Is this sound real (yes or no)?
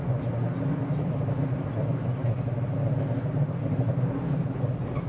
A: yes